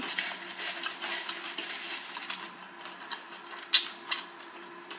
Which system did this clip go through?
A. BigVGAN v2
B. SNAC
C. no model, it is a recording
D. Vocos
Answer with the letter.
C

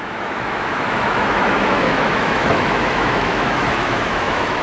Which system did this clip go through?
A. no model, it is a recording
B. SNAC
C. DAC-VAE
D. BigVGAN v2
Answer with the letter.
C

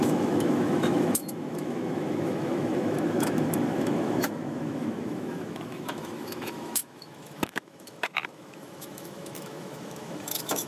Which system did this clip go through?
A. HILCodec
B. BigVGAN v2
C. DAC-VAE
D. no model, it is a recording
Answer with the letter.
C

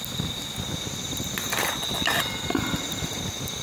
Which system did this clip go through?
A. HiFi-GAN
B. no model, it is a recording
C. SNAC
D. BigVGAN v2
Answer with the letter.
B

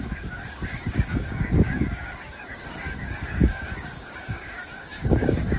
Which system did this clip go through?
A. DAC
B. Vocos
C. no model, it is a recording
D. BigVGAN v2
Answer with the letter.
A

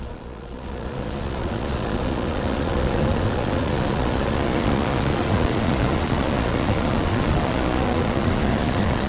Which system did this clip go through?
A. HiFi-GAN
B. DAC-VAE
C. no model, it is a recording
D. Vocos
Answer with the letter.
D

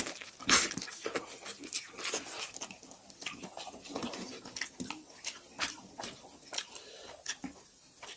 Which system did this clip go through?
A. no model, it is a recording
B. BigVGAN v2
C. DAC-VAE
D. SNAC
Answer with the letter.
A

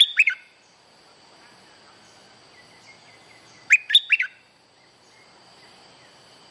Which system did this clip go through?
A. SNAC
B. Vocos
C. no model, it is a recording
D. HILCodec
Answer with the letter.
C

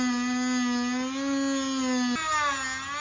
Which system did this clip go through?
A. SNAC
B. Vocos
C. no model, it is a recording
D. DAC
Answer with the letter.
C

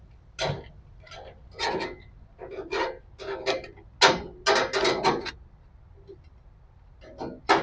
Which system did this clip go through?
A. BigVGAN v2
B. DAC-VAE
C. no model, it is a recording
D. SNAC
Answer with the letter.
C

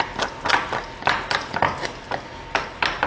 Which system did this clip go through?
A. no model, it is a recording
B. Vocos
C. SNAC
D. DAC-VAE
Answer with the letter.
A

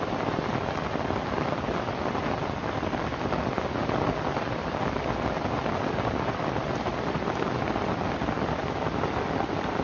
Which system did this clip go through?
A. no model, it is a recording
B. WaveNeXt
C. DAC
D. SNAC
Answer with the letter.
A